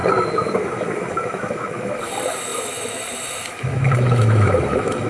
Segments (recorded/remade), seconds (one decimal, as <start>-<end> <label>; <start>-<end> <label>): 0.0-5.1 remade